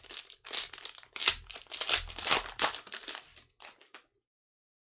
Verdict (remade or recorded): recorded